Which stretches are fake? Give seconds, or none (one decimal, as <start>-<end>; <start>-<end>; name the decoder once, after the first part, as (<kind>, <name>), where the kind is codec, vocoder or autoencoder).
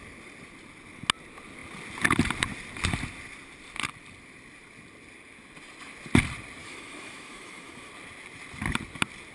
6.6-7.9 (autoencoder, DAC-VAE)